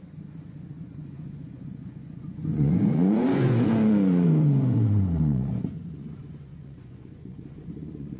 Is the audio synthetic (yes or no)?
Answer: yes